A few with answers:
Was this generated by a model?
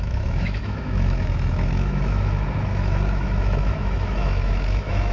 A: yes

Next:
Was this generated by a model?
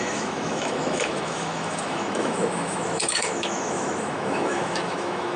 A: yes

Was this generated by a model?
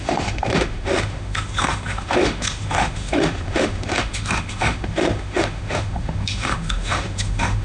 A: yes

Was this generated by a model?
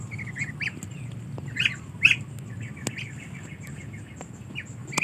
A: no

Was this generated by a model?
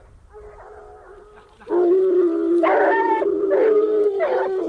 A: no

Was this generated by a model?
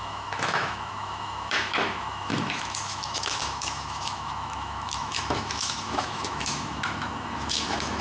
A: yes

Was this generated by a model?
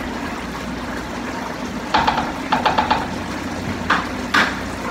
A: no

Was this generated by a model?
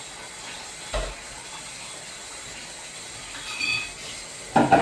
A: no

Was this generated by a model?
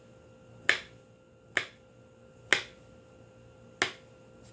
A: no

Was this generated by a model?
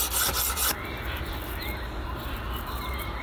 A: no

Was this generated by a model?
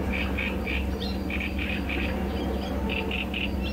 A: no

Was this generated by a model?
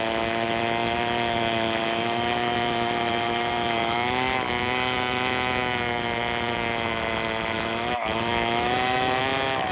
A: yes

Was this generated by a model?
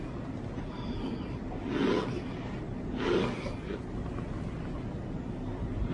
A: no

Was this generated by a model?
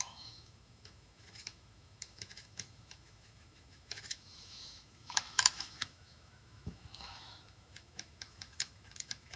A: yes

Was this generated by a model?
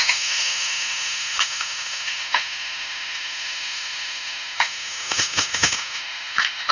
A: yes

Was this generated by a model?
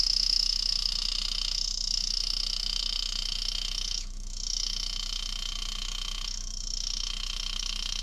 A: yes